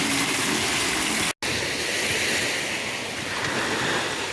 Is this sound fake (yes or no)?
no